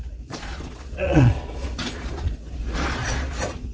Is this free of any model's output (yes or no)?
no